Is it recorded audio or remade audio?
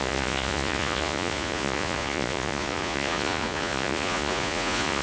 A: remade